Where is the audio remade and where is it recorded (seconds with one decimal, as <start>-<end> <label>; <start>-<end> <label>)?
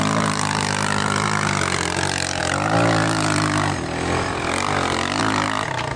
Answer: 0.0-6.0 recorded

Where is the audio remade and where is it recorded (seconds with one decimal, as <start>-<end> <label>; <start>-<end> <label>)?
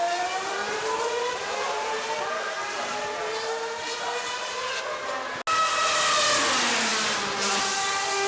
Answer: 0.0-4.8 remade; 4.8-8.3 recorded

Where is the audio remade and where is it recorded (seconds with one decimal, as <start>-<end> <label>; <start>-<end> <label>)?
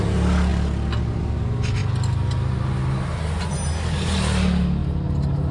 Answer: 0.0-5.5 recorded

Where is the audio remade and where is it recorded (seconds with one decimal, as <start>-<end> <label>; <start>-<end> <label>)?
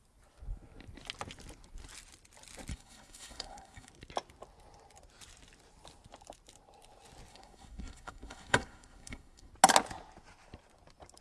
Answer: 0.0-2.7 recorded; 2.7-3.9 remade; 3.9-7.3 recorded; 7.3-9.5 remade; 9.5-11.2 recorded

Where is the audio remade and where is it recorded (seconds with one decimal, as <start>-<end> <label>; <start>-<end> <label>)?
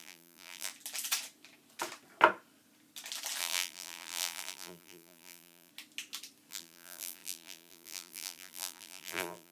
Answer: 0.0-0.7 remade; 0.7-3.4 recorded; 3.4-5.7 remade; 5.7-6.5 recorded; 6.5-9.5 remade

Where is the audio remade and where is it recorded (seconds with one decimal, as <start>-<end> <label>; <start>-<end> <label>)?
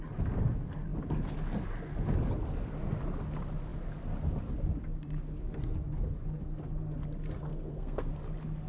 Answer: 0.0-7.5 recorded; 7.5-8.1 remade; 8.1-8.7 recorded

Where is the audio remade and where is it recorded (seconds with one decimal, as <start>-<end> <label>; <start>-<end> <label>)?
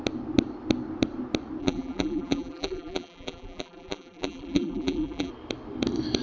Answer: 0.0-1.6 recorded; 1.6-5.3 remade; 5.3-6.2 recorded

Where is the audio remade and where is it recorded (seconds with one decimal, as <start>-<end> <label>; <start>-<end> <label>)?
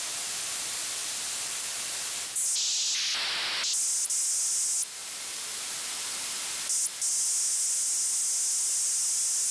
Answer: 0.0-1.0 recorded; 1.0-1.6 remade; 1.6-9.5 recorded